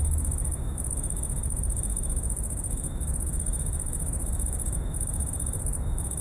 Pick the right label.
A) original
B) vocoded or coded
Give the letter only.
B